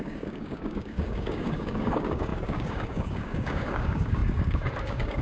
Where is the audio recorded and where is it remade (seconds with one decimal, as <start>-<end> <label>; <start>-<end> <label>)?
0.0-5.2 remade